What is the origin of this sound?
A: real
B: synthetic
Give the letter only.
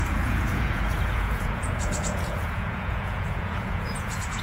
B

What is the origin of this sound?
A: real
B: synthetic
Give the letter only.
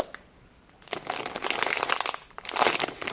A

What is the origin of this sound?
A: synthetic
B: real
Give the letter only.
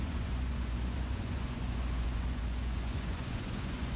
A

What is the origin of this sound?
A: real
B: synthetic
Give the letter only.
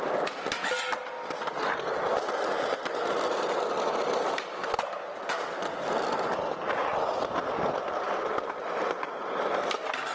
A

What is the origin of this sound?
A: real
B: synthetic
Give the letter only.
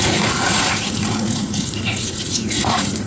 B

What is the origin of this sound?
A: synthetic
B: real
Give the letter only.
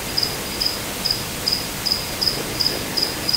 B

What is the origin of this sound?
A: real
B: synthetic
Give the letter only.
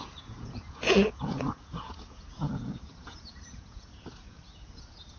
B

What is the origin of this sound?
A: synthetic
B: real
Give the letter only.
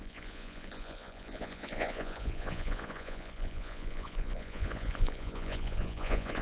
A